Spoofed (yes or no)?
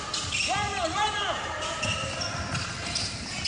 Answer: no